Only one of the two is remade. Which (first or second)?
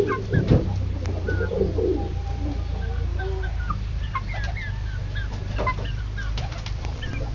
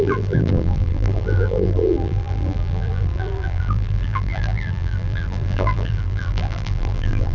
second